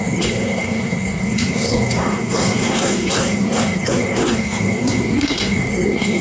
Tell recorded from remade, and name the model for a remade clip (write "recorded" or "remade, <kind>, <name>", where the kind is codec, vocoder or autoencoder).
remade, codec, SNAC